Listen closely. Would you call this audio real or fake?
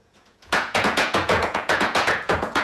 fake